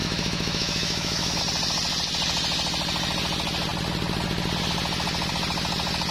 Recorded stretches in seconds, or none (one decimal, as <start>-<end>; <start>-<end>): 1.4-6.1